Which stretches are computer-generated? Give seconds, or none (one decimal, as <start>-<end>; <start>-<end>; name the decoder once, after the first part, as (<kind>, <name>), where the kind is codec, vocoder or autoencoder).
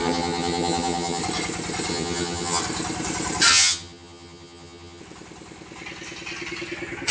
0.0-1.2 (vocoder, HiFi-GAN); 1.9-2.6; 3.5-5.0